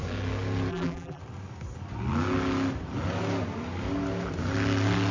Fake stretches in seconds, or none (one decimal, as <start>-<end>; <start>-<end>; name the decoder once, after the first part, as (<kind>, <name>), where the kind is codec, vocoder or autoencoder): 0.7-1.2 (vocoder, BigVGAN v2)